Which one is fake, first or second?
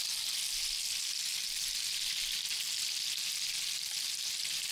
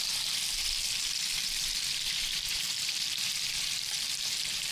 second